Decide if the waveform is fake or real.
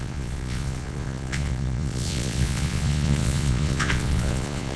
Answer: fake